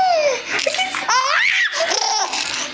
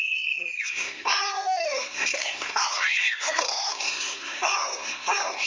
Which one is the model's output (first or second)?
second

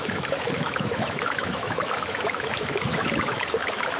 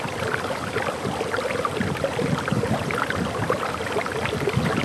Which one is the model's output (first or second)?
first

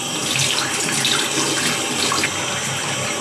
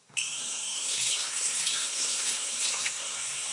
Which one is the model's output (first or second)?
second